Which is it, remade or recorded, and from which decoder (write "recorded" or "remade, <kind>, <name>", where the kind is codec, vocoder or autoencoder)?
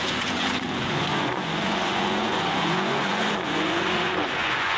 remade, vocoder, Vocos